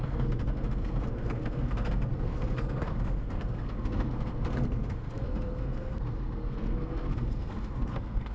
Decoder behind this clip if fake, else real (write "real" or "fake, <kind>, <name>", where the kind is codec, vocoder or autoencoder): fake, codec, SNAC